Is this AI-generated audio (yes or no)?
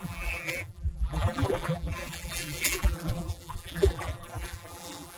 yes